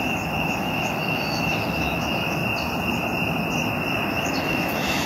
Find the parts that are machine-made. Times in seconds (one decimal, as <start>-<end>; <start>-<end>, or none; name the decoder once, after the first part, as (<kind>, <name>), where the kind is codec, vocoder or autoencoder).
0.0-2.4 (autoencoder, DAC-VAE); 4.1-5.1